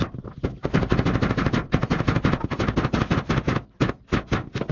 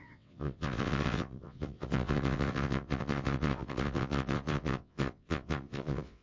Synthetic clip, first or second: second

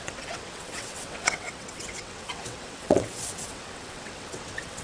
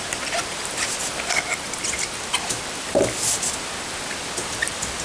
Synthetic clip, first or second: first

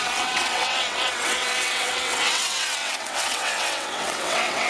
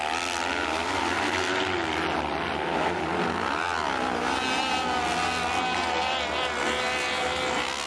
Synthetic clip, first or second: first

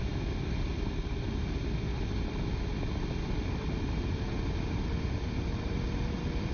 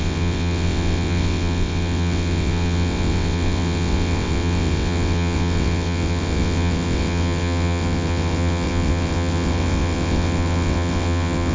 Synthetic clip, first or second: second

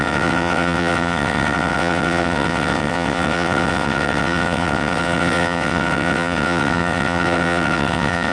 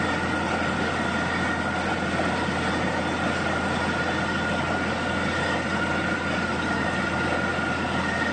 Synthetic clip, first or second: first